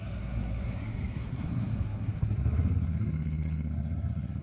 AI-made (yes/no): yes